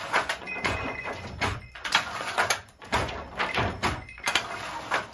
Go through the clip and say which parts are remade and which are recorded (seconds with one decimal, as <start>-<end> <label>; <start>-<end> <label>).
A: 0.0-3.1 remade; 3.1-3.8 recorded; 3.8-4.4 remade; 4.4-5.1 recorded